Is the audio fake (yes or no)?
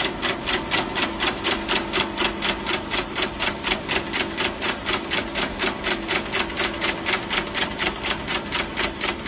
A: no